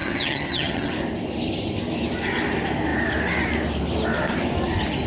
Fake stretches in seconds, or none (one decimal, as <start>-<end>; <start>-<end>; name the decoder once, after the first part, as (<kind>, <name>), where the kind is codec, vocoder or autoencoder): 0.0-0.9 (vocoder, HiFi-GAN)